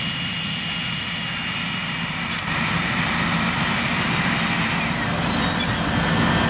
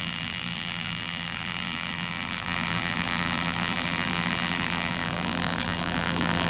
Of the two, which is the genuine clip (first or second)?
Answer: first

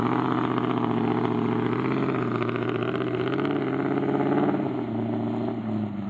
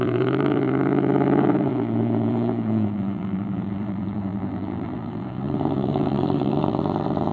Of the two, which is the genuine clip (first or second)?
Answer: first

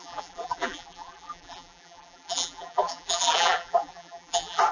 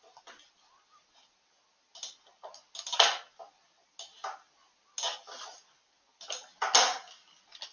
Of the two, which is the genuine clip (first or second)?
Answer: second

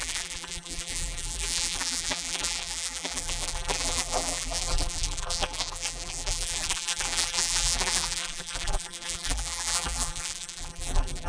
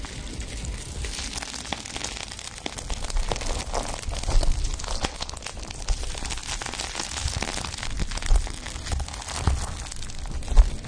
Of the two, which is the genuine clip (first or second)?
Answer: second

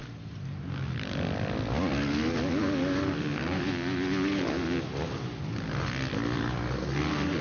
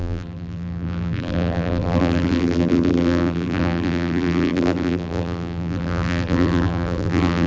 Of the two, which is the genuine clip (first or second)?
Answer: first